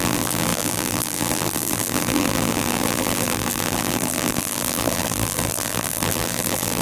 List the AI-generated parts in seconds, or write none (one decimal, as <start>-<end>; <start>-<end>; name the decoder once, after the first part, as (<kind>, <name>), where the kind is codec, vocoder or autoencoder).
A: 0.0-6.8 (vocoder, BigVGAN v2)